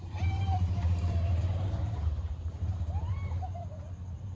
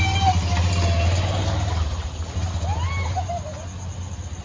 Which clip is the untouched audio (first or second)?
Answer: second